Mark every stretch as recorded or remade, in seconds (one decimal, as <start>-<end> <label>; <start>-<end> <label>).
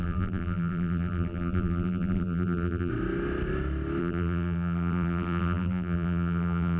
0.0-2.9 remade; 2.9-4.0 recorded; 4.0-6.8 remade